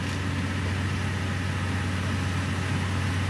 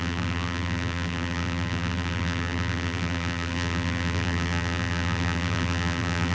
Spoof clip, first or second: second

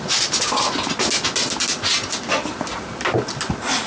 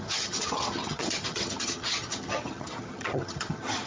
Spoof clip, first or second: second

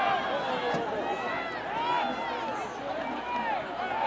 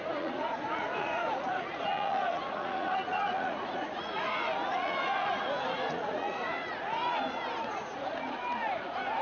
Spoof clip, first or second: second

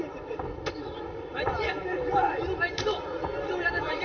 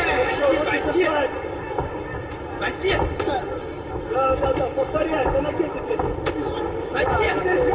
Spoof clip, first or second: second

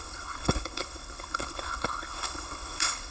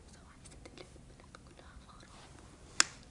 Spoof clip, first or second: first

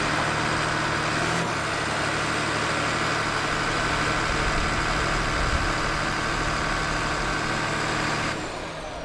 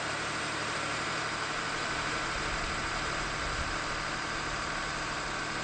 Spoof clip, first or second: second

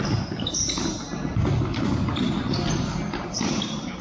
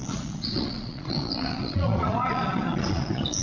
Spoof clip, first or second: second